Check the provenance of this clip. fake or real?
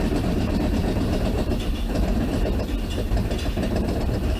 fake